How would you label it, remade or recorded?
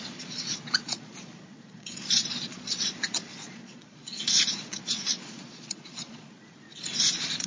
remade